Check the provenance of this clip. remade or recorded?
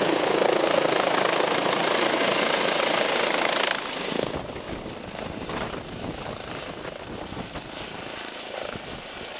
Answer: recorded